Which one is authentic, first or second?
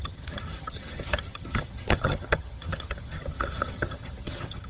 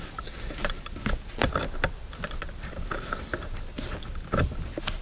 second